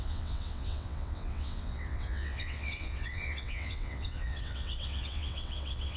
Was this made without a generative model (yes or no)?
no